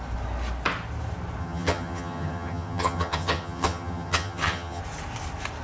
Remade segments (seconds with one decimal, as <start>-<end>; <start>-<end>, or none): 1.4-4.8